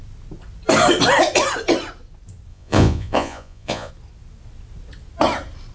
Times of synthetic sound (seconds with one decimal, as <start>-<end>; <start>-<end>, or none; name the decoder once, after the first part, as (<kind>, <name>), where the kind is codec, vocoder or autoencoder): 2.5-3.9 (vocoder, Vocos)